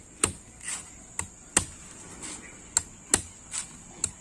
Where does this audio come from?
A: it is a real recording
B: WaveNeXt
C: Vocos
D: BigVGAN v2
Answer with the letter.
A